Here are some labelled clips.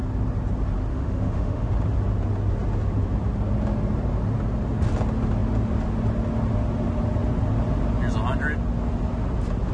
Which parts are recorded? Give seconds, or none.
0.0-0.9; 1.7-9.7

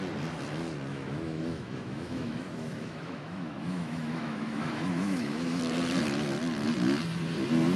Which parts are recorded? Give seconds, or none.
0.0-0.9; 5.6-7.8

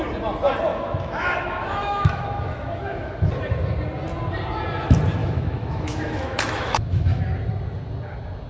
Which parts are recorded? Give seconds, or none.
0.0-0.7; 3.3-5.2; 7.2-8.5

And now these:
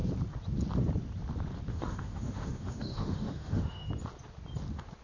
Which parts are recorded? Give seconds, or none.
0.0-1.7; 3.9-5.0

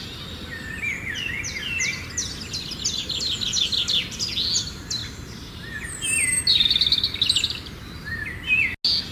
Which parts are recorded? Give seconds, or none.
0.0-9.1

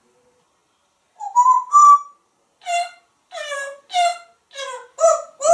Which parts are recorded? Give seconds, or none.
0.0-5.5